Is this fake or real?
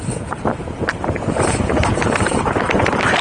real